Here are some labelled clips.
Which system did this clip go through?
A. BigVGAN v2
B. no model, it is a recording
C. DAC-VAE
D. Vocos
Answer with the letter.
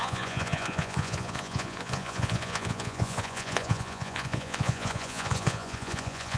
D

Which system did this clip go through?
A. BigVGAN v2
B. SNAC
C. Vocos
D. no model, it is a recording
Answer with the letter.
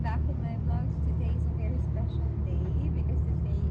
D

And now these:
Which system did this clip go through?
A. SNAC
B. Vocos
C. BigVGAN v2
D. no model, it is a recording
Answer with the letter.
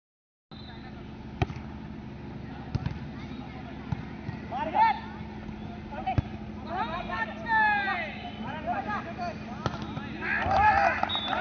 D